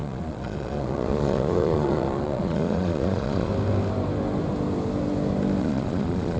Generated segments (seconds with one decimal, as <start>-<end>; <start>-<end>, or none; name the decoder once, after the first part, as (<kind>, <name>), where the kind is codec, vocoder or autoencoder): 0.0-3.5 (vocoder, Vocos); 5.6-6.4